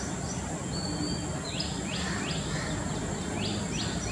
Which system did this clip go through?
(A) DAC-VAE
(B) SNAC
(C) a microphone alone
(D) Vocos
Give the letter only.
C